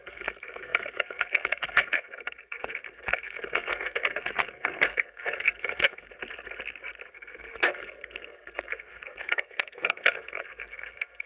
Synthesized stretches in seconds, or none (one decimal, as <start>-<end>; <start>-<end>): 0.0-6.1; 7.1-11.3